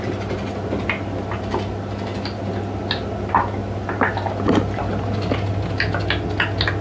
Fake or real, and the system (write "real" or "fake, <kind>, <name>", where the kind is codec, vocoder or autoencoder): real